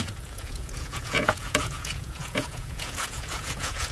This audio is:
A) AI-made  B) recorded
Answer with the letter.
A